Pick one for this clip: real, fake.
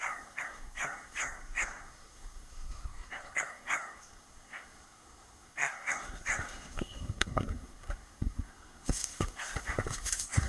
fake